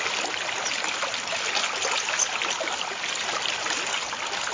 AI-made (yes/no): no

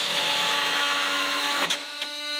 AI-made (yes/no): yes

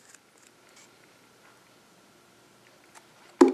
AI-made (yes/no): no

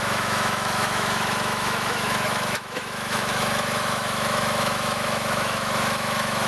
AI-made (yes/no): yes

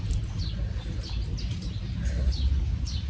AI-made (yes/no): no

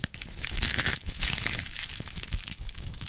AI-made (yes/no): yes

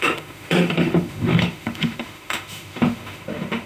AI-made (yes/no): yes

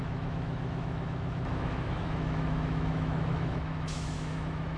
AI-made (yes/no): yes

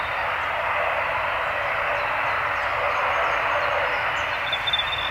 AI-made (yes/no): no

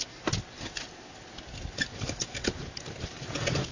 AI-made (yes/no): no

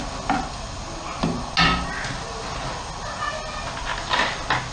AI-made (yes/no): no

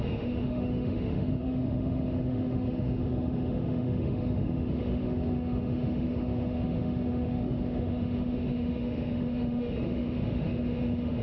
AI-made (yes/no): yes